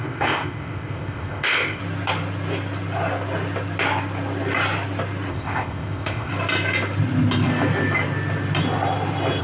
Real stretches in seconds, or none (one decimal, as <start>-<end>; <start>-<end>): 1.8-5.3; 6.3-9.4